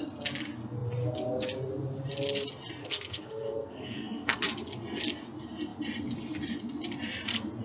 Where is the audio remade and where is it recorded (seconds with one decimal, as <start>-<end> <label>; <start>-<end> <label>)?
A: 0.0-2.8 recorded; 2.8-4.4 remade; 4.4-7.6 recorded